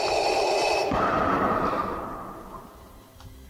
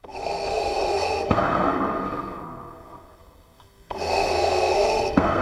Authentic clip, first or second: first